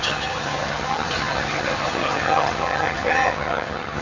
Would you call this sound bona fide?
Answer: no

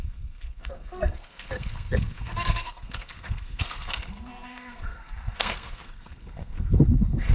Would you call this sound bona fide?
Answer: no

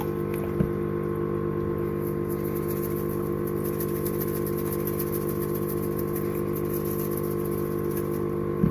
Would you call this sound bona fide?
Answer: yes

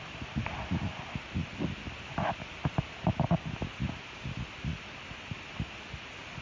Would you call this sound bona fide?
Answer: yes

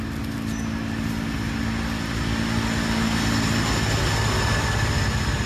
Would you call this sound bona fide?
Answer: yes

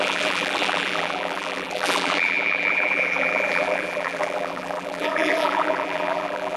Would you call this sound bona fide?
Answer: no